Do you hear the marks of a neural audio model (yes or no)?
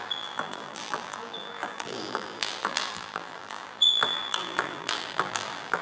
yes